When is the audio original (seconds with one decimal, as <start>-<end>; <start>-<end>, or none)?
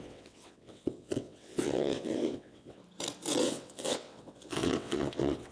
2.8-3.4